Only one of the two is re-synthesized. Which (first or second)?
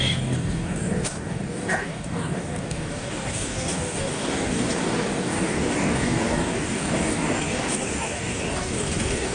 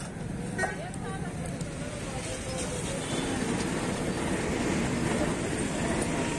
first